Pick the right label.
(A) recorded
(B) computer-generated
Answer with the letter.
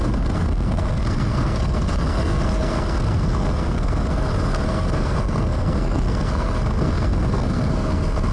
B